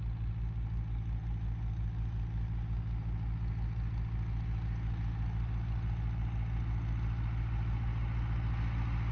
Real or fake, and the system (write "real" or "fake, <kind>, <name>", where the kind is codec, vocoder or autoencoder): real